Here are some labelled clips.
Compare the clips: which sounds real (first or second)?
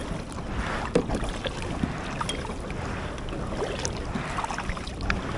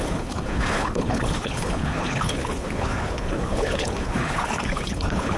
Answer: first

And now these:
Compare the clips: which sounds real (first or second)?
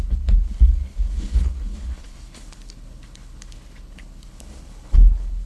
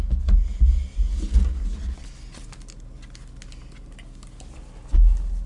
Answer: second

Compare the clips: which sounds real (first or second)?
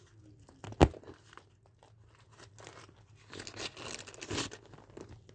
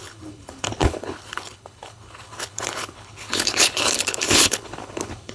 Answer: first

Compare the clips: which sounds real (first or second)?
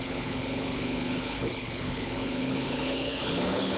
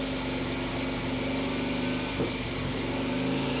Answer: second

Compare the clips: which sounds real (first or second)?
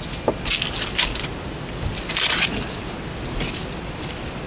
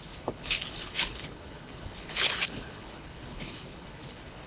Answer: first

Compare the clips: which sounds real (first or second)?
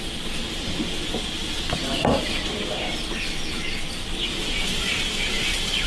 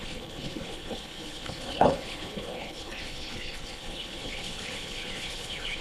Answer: first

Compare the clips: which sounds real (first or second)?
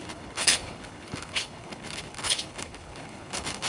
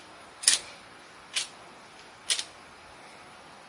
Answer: second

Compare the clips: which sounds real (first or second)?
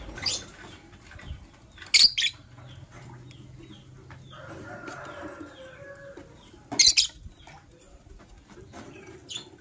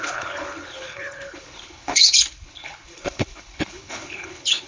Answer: first